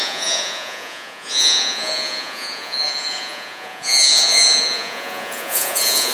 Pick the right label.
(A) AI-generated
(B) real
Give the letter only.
A